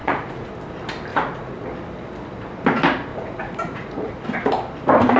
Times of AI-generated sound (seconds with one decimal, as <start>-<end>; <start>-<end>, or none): 0.0-0.5; 1.1-1.7; 3.1-4.1